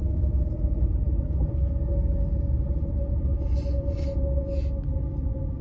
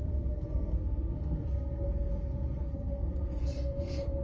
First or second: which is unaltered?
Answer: first